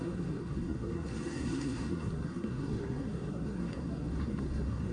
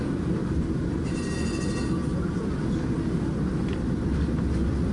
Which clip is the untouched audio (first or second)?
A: second